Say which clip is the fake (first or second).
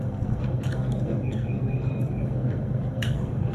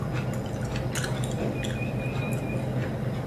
first